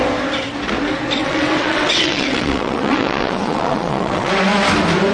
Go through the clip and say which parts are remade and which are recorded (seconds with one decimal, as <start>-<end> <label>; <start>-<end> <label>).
0.0-1.2 recorded; 1.2-4.3 remade; 4.3-5.1 recorded